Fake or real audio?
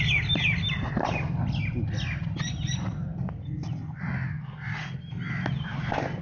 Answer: real